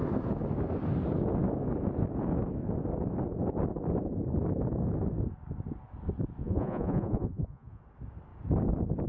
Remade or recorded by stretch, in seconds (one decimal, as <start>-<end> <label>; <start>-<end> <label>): 0.0-6.4 recorded; 6.4-7.8 remade; 7.8-9.1 recorded